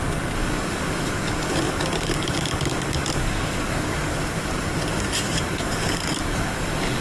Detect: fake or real fake